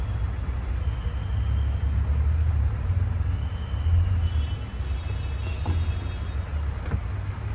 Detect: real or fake real